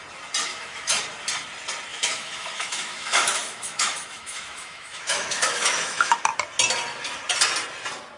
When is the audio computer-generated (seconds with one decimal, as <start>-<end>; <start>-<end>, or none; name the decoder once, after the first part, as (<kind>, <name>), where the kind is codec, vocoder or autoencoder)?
0.5-1.0 (autoencoder, DAC-VAE); 1.9-6.2